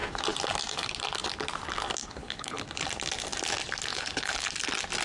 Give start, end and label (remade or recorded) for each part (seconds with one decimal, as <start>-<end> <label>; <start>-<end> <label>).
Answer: 0.0-2.0 recorded; 2.0-2.6 remade; 2.6-3.9 recorded; 3.9-4.5 remade; 4.5-5.0 recorded